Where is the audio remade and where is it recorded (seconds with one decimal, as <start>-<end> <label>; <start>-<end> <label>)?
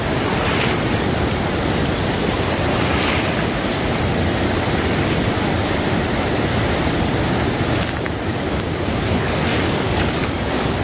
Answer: 0.0-8.3 recorded; 8.3-10.8 remade